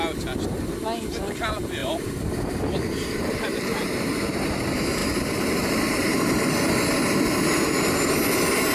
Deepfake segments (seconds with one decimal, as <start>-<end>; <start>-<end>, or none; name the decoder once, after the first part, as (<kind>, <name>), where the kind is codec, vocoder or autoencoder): 1.8-4.2 (vocoder, BigVGAN v2); 5.0-6.4